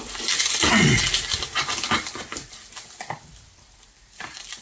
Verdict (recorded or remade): remade